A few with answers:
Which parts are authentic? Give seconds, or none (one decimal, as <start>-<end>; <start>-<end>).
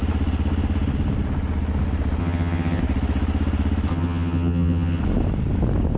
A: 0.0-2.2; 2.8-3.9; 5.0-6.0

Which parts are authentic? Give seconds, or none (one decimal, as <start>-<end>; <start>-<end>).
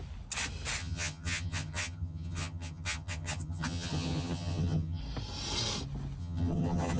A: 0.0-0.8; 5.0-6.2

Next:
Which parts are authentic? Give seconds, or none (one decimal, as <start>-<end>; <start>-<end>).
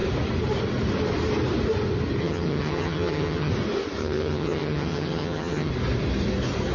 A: 0.0-2.2; 3.5-4.0; 5.7-6.7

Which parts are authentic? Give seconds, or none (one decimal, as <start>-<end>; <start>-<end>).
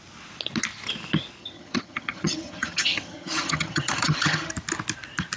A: 0.0-1.4; 4.5-5.4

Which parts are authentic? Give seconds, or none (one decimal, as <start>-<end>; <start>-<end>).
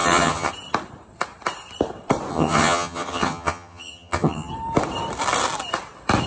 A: 0.5-2.3; 4.5-6.3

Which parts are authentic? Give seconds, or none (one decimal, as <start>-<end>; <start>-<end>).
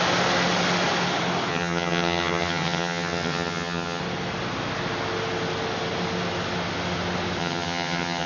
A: 0.0-1.5; 4.0-7.4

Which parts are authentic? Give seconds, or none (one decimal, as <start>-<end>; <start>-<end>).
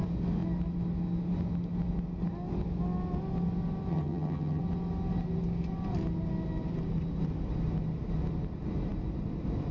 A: 0.0-3.9; 4.6-9.7